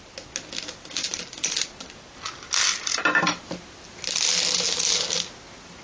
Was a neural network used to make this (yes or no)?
no